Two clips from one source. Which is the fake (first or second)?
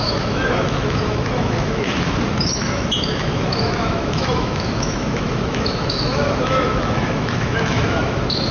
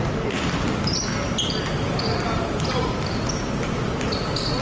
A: first